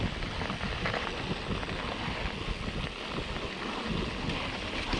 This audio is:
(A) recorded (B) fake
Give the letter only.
A